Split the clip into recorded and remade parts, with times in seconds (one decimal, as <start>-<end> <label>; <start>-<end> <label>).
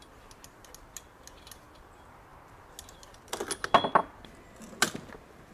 0.0-5.5 recorded